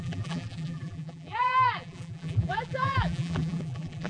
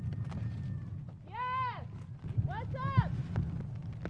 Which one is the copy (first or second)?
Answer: first